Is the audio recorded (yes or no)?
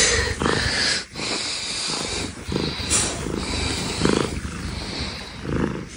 yes